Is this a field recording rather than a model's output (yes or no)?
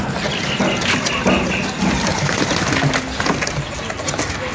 yes